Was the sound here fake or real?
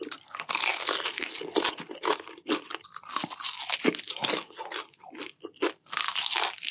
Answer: real